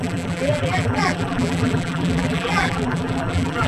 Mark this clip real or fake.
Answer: fake